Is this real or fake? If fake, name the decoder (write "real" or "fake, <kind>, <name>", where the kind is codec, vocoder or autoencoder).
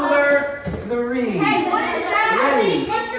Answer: real